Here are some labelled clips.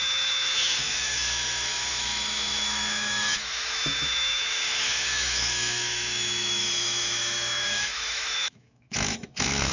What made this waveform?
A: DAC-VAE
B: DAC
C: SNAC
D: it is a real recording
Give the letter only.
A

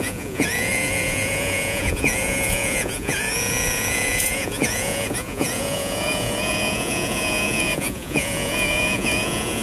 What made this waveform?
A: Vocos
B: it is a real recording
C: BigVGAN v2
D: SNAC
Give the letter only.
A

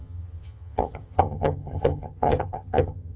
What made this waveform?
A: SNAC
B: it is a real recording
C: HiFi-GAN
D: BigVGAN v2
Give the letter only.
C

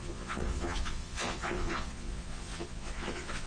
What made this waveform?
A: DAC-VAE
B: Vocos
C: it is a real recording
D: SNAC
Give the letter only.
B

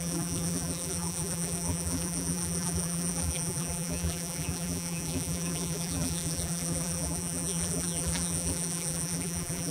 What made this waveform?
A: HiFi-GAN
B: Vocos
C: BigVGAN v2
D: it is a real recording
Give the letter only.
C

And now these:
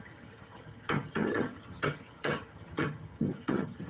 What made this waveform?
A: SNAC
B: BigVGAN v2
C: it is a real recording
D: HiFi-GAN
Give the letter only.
D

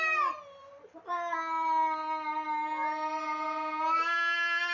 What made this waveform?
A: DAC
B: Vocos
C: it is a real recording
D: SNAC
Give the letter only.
C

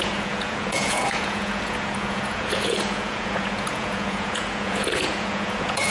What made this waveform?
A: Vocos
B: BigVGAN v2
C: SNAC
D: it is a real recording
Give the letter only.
A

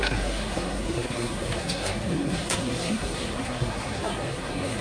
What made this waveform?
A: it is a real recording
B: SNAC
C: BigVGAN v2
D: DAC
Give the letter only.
B